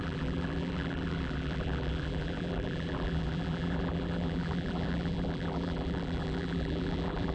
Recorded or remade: remade